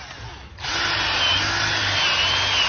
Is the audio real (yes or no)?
yes